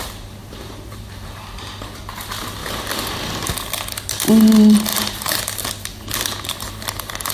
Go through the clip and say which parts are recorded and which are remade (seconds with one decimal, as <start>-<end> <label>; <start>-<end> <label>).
0.0-0.4 recorded; 0.4-2.0 remade; 2.0-4.9 recorded; 4.9-5.4 remade; 5.4-7.3 recorded

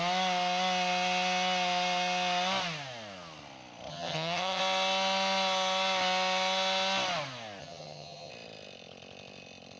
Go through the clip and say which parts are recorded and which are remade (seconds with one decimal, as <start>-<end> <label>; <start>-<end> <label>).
0.0-3.9 recorded; 3.9-4.6 remade; 4.6-7.6 recorded; 7.6-8.3 remade; 8.3-9.8 recorded

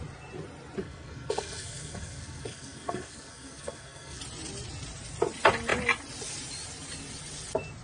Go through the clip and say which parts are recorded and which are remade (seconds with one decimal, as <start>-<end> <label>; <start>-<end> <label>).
0.0-0.8 recorded; 0.8-4.2 remade; 4.2-7.8 recorded

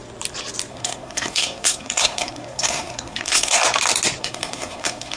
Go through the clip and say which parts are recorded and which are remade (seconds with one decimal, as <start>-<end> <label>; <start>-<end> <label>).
0.0-0.7 recorded; 0.7-3.6 remade; 3.6-4.2 recorded; 4.2-5.2 remade

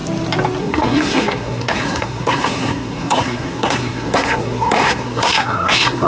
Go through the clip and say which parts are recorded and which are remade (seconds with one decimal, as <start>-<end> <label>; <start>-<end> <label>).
0.0-0.6 recorded; 0.6-6.1 remade

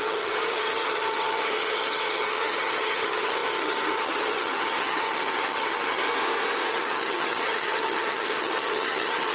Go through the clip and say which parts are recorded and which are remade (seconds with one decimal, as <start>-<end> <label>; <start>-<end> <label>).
0.0-6.0 remade; 6.0-6.7 recorded; 6.7-9.3 remade

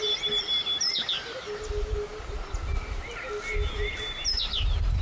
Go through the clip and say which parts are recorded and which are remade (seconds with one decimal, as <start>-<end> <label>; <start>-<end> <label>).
0.0-5.0 recorded